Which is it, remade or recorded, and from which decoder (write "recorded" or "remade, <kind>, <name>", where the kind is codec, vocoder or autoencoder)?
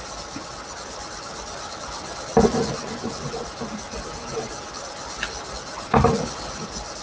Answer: recorded